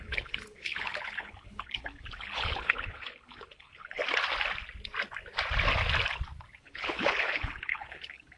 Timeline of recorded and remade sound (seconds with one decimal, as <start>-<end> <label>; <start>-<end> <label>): 0.0-4.0 remade; 4.0-6.6 recorded; 6.6-8.4 remade